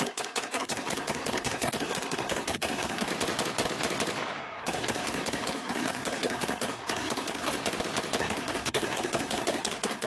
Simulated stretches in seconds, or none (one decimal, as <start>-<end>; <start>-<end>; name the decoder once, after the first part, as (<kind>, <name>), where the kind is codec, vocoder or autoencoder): 0.0-3.1 (codec, SNAC); 4.4-7.6; 8.2-10.1